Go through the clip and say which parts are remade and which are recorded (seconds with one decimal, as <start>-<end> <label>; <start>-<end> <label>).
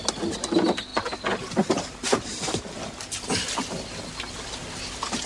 0.0-5.3 recorded